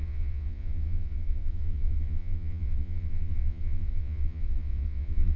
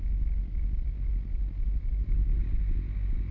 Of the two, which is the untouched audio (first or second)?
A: second